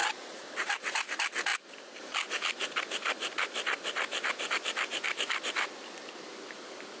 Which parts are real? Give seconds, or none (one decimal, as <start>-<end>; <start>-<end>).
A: 0.0-7.0